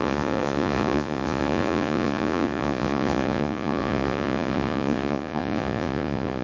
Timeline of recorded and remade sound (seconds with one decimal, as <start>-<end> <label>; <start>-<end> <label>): 0.0-6.4 remade